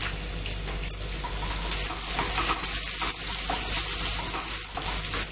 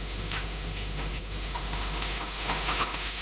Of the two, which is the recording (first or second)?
first